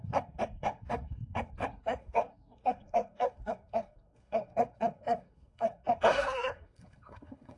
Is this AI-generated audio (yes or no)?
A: yes